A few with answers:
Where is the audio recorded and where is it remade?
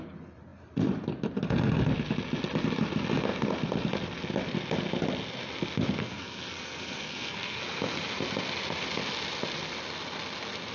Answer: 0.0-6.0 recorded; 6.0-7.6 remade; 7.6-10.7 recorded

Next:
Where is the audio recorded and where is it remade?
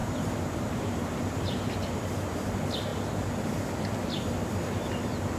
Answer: 0.0-1.6 remade; 1.6-5.4 recorded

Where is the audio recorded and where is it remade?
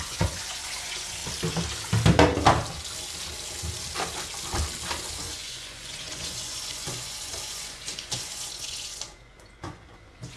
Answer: 0.0-1.2 remade; 1.2-5.1 recorded; 5.1-10.4 remade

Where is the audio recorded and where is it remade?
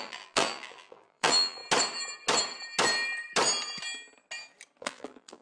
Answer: 0.0-1.6 remade; 1.6-4.8 recorded; 4.8-5.4 remade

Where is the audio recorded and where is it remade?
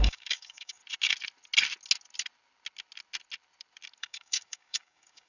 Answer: 0.0-0.8 remade; 0.8-4.0 recorded; 4.0-5.3 remade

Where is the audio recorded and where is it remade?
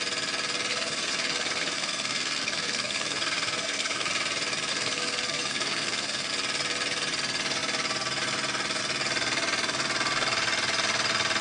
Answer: 0.0-0.7 recorded; 0.7-4.1 remade; 4.1-4.7 recorded; 4.7-6.3 remade; 6.3-11.4 recorded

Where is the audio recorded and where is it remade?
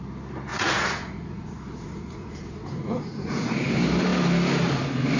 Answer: 0.0-0.5 recorded; 0.5-3.6 remade; 3.6-5.2 recorded